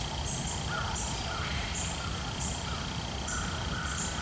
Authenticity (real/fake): real